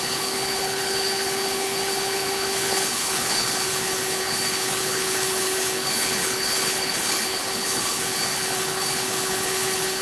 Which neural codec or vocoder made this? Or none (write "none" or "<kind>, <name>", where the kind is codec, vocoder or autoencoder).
codec, HILCodec